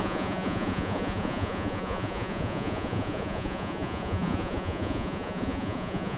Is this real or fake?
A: fake